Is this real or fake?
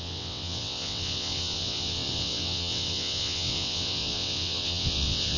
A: fake